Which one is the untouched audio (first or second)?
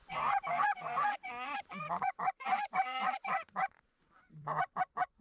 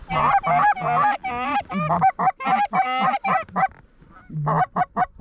second